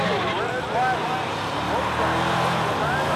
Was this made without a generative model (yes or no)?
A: yes